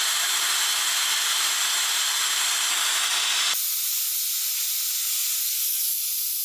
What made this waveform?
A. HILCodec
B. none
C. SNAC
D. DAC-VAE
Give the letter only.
B